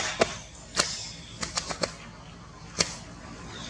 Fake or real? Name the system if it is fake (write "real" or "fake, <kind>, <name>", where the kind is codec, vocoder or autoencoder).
real